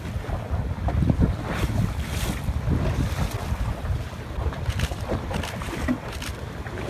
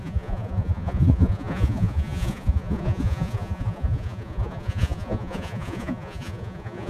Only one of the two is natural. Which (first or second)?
first